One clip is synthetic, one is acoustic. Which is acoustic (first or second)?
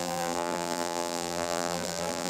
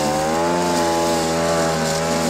second